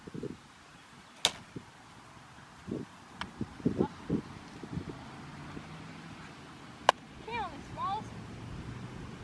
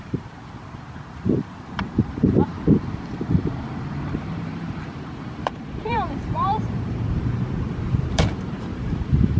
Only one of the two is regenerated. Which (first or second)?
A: second